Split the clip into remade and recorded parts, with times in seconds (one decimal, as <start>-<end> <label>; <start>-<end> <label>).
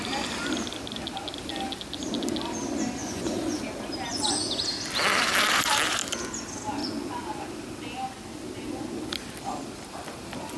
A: 0.0-3.0 recorded; 3.0-3.6 remade; 3.6-4.1 recorded; 4.1-4.6 remade; 4.6-6.8 recorded; 6.8-7.4 remade; 7.4-10.6 recorded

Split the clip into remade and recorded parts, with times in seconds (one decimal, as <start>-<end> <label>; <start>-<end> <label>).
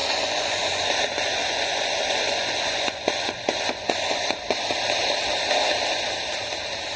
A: 0.0-0.9 remade; 0.9-1.4 recorded; 1.4-4.7 remade; 4.7-7.0 recorded